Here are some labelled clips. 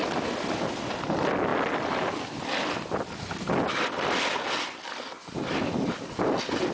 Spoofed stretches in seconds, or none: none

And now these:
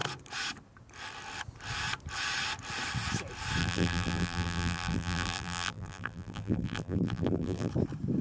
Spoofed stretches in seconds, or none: 3.6-7.7 (vocoder, BigVGAN v2)

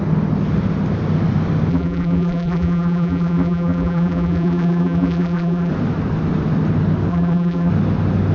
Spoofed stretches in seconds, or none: 1.7-5.7 (vocoder, BigVGAN v2); 7.1-7.7

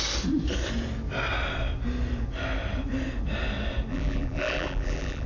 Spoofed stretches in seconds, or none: 3.9-5.3 (vocoder, BigVGAN v2)

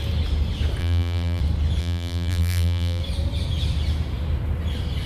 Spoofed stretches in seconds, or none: 0.8-1.4 (vocoder, BigVGAN v2); 1.8-3.0